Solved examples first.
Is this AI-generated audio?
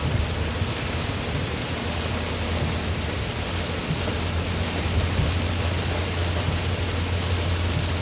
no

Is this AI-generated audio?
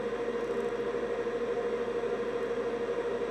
no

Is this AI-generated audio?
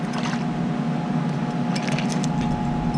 no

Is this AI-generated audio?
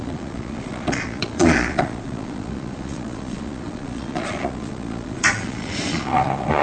yes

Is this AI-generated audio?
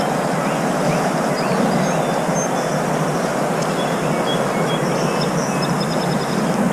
no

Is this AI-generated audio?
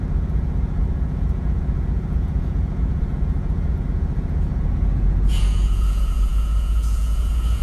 yes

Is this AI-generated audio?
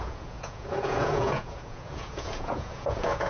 yes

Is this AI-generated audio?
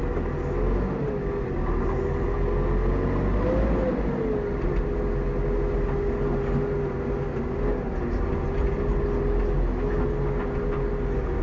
no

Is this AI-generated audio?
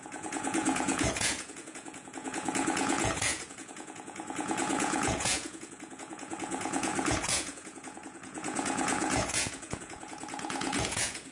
yes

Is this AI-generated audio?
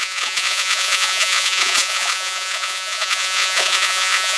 yes